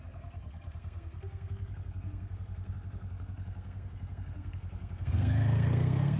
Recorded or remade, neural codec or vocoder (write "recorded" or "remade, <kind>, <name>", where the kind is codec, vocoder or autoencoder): remade, codec, SNAC